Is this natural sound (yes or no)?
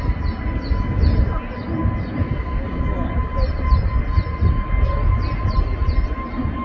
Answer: yes